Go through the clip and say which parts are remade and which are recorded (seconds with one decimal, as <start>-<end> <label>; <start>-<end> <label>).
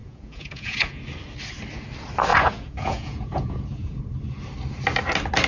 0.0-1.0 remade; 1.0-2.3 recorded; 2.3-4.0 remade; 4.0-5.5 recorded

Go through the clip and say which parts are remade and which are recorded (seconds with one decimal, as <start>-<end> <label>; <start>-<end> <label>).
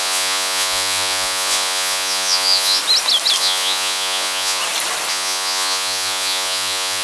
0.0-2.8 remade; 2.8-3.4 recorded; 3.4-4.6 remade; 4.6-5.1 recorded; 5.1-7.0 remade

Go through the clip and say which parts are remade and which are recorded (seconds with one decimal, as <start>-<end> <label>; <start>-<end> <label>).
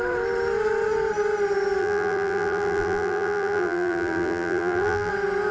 0.0-1.8 recorded; 1.8-5.1 remade; 5.1-5.5 recorded